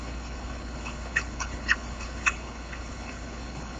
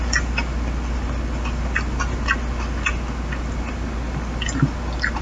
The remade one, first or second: first